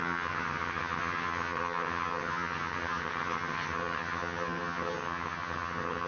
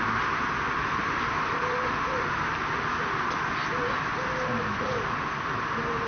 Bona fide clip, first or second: second